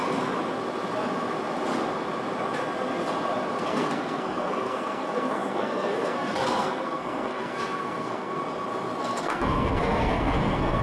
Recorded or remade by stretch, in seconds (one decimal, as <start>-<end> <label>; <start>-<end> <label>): 0.0-3.6 recorded; 3.6-8.4 remade; 8.4-9.0 recorded; 9.0-10.8 remade